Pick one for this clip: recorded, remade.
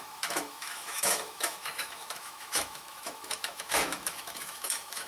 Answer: remade